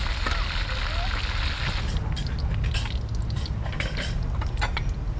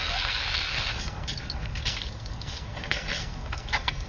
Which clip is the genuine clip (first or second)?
first